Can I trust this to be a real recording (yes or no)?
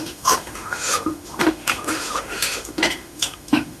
no